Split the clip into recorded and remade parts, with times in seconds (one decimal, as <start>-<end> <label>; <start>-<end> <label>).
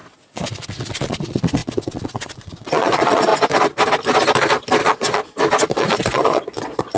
0.0-3.3 remade; 3.3-4.8 recorded; 4.8-5.2 remade; 5.2-5.7 recorded; 5.7-7.0 remade